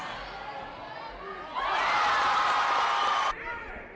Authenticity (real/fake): real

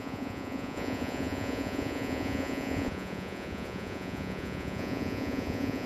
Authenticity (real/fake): fake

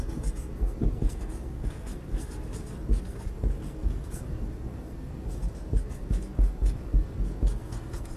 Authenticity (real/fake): fake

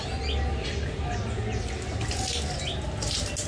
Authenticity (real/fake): real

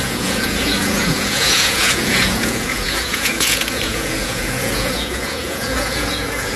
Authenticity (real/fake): fake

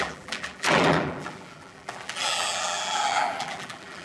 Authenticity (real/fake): fake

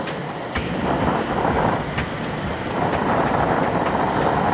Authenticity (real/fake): real